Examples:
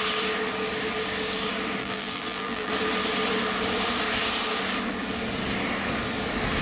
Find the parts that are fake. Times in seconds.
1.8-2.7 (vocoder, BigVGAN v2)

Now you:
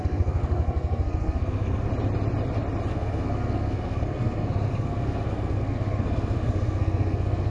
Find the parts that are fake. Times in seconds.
0.0-1.9 (codec, SNAC); 2.9-7.5

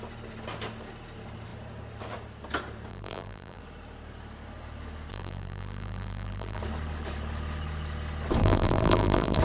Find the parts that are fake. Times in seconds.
2.9-3.6 (vocoder, BigVGAN v2); 5.1-6.6; 8.4-9.4

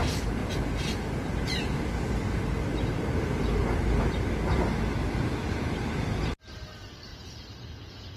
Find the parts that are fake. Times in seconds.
7.1-8.2 (vocoder, Vocos)

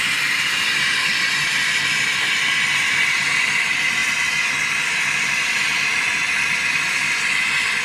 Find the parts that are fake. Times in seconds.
none